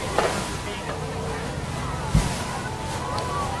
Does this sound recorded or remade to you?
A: recorded